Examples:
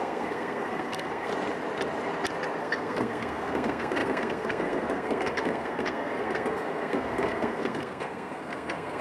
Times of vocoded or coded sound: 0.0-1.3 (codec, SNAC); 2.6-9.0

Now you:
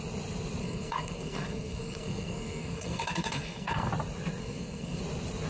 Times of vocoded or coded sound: 0.6-3.9 (codec, SNAC); 4.4-5.0

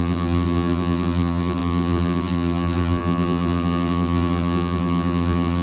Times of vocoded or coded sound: 0.0-5.6 (vocoder, BigVGAN v2)

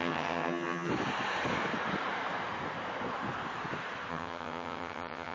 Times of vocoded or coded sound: 0.0-0.9 (vocoder, HiFi-GAN); 4.1-5.3

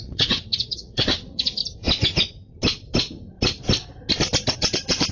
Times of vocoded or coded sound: 0.0-1.6 (vocoder, WaveNeXt); 4.5-5.1